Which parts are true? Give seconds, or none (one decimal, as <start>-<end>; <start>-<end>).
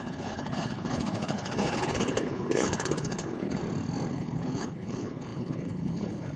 3.6-4.1